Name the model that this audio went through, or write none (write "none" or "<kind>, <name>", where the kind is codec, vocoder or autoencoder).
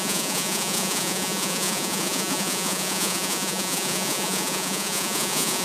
vocoder, Vocos